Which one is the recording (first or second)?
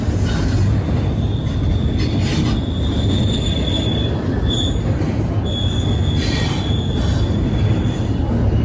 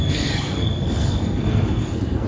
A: first